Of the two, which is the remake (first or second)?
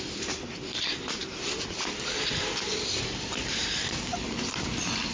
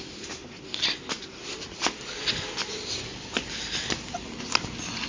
first